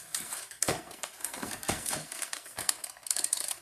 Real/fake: fake